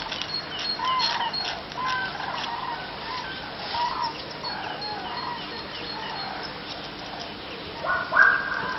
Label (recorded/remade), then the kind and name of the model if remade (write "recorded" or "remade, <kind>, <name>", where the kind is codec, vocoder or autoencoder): recorded